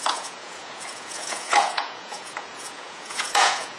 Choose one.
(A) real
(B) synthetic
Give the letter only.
B